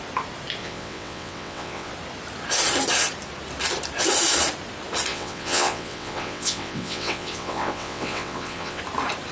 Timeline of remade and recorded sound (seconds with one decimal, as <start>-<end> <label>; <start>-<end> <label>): 0.0-0.6 recorded; 0.6-1.9 remade; 1.9-5.1 recorded; 5.1-8.8 remade; 8.8-9.3 recorded